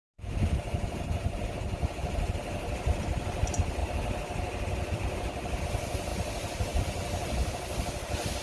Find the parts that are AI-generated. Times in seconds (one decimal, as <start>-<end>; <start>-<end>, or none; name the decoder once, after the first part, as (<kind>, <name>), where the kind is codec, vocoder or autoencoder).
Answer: none